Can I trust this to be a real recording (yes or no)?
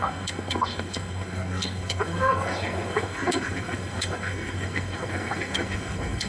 no